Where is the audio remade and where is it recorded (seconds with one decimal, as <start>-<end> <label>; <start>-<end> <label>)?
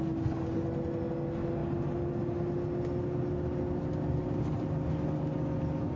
0.0-6.0 recorded